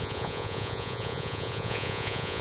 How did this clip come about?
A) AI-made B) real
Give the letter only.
A